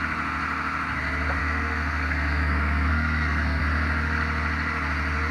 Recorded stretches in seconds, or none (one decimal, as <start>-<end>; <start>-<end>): 0.0-1.4; 3.6-5.3